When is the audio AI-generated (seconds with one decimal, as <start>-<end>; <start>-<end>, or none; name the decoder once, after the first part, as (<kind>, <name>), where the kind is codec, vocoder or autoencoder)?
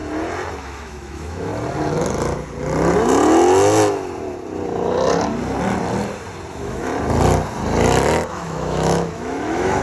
0.6-1.5 (autoencoder, DAC-VAE); 6.5-6.9; 8.3-9.8